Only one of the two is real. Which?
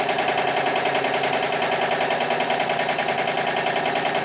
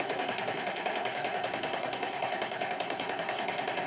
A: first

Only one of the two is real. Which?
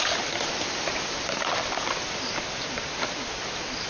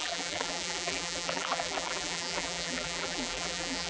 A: first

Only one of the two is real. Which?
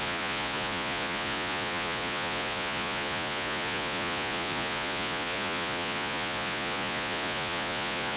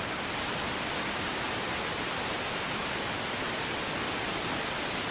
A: second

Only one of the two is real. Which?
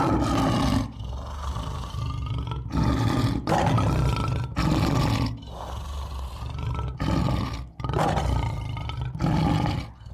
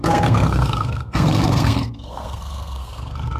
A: first